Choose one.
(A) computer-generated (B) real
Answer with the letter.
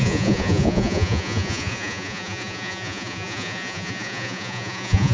A